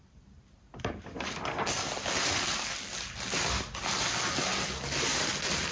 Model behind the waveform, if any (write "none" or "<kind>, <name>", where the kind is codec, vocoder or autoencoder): none